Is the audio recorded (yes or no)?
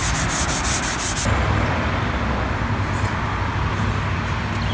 yes